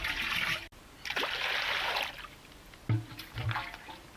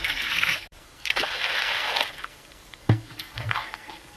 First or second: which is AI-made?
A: second